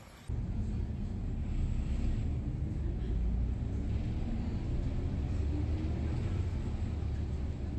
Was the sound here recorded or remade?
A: recorded